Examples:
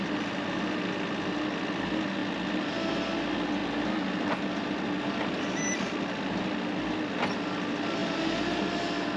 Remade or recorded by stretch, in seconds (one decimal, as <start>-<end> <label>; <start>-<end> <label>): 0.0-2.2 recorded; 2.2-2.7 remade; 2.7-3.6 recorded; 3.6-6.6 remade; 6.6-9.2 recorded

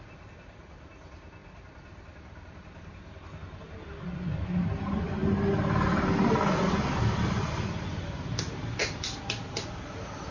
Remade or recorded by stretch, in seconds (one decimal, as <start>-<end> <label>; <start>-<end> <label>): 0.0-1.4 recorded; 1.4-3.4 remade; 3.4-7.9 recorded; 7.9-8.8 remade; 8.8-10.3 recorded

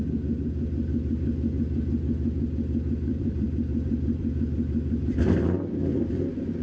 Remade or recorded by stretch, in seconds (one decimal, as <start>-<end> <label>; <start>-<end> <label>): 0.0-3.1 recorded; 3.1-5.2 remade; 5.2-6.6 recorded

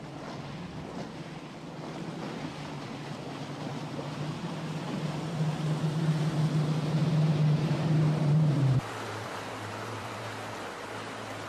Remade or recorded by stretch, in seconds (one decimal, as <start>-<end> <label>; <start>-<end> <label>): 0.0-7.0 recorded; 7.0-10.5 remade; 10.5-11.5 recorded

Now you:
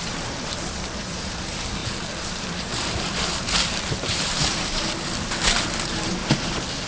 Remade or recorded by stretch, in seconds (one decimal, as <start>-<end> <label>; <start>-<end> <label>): 0.0-6.2 remade; 6.2-6.9 recorded